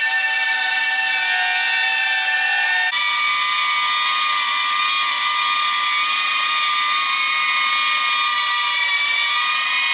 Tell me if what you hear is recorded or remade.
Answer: recorded